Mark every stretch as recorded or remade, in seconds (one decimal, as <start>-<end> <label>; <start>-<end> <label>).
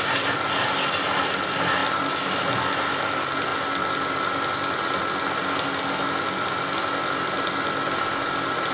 0.0-8.7 recorded